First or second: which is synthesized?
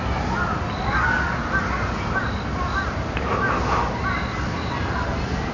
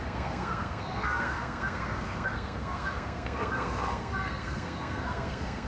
second